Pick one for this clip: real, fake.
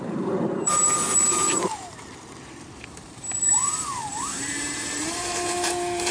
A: fake